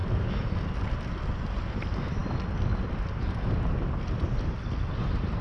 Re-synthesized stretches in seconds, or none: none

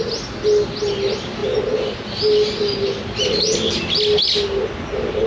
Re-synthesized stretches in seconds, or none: none

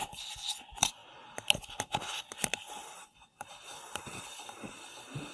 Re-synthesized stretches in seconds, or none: none

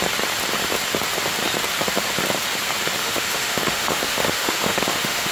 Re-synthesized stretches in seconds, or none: 3.0-5.3 (autoencoder, DAC-VAE)

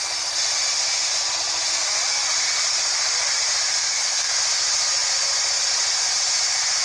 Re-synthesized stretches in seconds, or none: 3.8-4.3 (autoencoder, DAC-VAE)